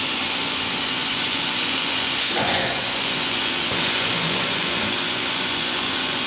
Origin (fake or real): fake